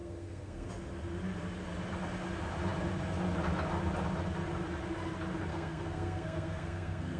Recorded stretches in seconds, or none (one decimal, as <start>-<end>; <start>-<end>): 0.7-5.5